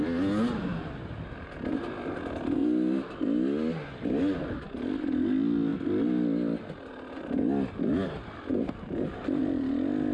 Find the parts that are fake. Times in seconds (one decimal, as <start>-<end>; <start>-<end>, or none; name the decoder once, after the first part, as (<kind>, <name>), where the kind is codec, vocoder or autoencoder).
0.6-1.5 (vocoder, BigVGAN v2); 8.5-9.4